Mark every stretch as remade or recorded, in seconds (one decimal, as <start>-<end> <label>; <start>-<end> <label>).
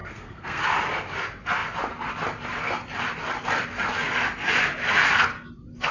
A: 0.0-0.6 remade; 0.6-5.9 recorded